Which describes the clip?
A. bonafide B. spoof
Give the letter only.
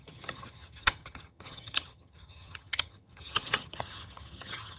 B